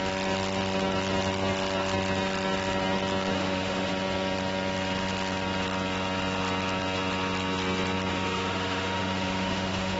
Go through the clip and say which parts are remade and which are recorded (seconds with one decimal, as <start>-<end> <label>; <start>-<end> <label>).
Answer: 0.0-3.3 recorded; 3.3-3.9 remade; 3.9-8.1 recorded; 8.1-10.0 remade